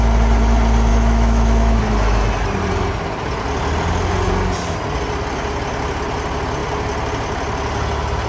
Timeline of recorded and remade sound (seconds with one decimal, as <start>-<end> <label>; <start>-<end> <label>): 0.0-0.9 recorded; 0.9-1.8 remade; 1.8-8.3 recorded

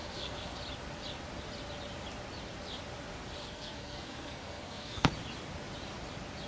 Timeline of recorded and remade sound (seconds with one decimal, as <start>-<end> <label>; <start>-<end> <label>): 0.0-0.6 remade; 0.6-3.4 recorded; 3.4-5.1 remade; 5.1-6.5 recorded

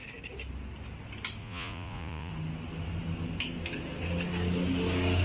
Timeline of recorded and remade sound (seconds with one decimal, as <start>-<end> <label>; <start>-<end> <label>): 0.0-1.4 recorded; 1.4-2.3 remade; 2.3-5.2 recorded

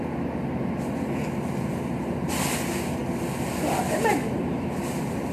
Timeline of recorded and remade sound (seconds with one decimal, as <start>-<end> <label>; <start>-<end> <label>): 0.0-5.3 recorded

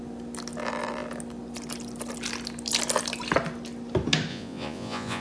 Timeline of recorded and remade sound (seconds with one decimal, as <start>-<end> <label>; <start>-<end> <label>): 0.0-4.3 recorded; 4.3-5.2 remade

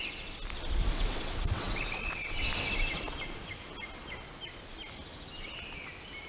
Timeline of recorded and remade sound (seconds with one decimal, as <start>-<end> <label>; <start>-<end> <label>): 0.0-0.8 recorded; 0.8-2.4 remade; 2.4-6.3 recorded

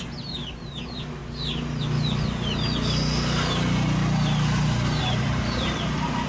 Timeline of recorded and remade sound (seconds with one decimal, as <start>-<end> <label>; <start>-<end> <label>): 0.0-1.2 remade; 1.2-5.0 recorded; 5.0-6.3 remade